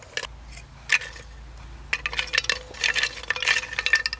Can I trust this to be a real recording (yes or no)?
yes